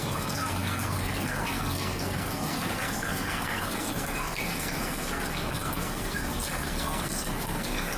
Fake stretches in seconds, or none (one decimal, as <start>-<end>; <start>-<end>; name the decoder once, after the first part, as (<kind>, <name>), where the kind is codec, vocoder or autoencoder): 0.0-8.0 (codec, SNAC)